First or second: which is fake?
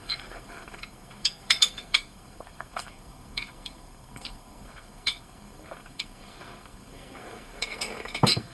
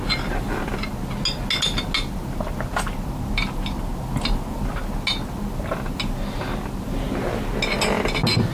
first